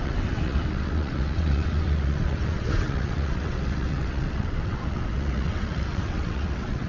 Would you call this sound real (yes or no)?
no